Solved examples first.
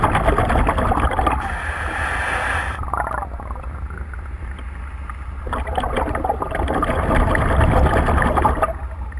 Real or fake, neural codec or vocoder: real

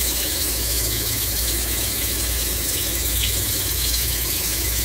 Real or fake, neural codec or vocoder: fake, autoencoder, DAC-VAE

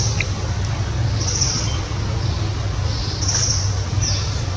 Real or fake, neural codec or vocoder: real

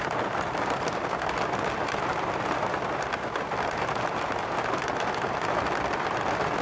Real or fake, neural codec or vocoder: real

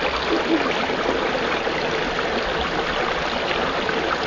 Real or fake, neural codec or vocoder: real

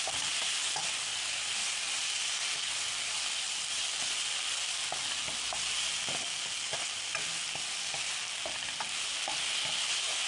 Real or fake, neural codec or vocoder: real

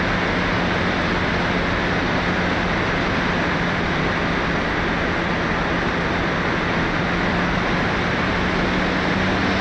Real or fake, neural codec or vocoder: real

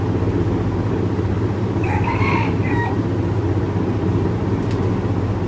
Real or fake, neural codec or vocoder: real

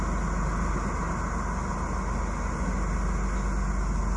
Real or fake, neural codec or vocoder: real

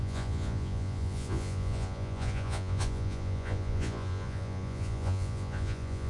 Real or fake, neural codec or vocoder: fake, vocoder, Vocos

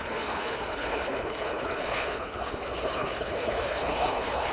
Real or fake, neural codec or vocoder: fake, codec, HILCodec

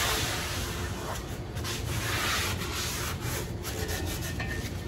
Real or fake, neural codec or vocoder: real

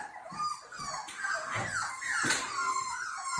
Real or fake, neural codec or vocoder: real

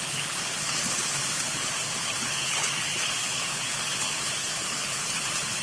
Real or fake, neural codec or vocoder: fake, codec, HILCodec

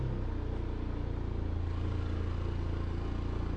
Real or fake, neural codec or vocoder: real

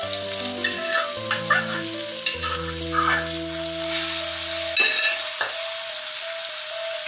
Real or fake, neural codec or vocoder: real